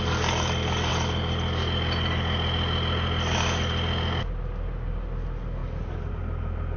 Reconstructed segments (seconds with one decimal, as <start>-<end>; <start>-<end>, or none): none

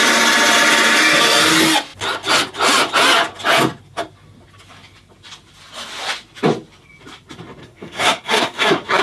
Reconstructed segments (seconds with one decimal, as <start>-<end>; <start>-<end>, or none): 7.6-9.0

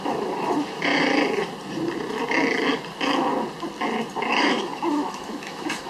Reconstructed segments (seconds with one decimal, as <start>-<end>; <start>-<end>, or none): 0.0-0.9; 4.3-5.9

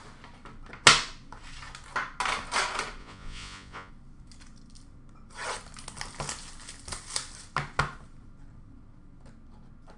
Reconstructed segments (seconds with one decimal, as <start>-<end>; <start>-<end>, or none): 3.0-3.9

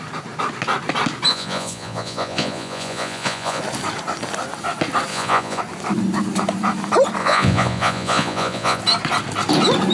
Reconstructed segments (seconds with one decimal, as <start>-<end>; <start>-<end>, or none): 1.3-3.6; 5.1-5.6; 7.2-8.8

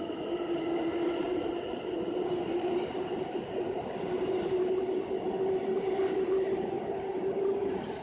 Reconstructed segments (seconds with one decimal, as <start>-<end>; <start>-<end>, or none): 1.2-4.8

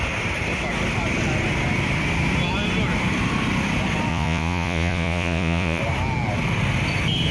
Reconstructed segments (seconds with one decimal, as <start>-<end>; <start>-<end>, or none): 4.1-5.8

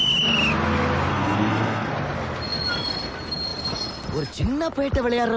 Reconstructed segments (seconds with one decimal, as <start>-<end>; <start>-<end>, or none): 1.1-1.9